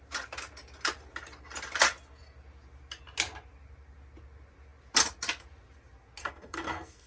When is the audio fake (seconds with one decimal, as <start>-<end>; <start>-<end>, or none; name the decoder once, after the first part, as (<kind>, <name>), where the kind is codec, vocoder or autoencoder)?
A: 6.2-7.1 (codec, SNAC)